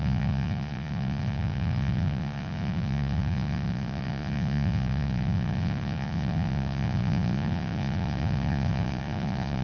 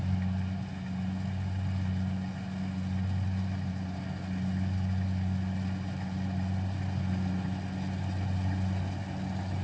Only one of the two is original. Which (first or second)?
second